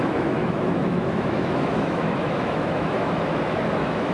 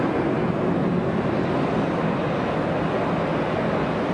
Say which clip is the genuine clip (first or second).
second